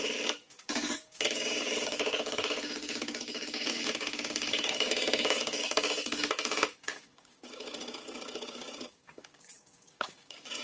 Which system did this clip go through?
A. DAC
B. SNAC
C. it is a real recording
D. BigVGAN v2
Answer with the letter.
A